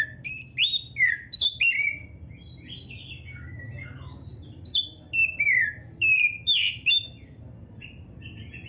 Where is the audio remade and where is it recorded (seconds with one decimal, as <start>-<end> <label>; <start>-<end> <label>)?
0.0-8.7 recorded